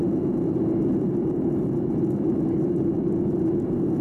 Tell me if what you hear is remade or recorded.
recorded